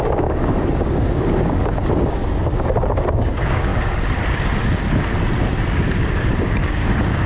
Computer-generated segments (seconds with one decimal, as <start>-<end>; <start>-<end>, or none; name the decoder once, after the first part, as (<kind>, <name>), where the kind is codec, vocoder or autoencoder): 0.0-2.2 (codec, DAC); 3.1-3.7; 6.2-7.3

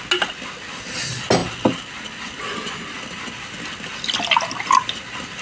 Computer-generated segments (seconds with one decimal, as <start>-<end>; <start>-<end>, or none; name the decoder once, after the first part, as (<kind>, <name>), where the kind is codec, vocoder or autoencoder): none

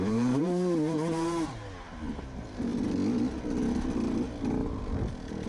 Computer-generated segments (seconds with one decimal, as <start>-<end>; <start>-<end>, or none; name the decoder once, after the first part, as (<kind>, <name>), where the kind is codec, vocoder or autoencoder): 0.0-2.7 (vocoder, BigVGAN v2)

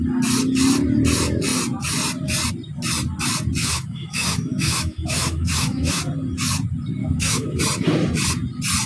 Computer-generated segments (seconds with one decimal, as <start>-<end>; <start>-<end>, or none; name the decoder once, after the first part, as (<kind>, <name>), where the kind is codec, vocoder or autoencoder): 3.6-6.0 (autoencoder, DAC-VAE); 7.0-7.6

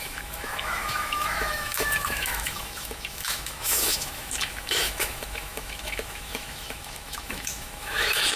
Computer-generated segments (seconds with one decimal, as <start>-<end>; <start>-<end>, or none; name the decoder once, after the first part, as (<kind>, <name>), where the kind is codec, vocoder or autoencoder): 0.0-8.4 (autoencoder, DAC-VAE)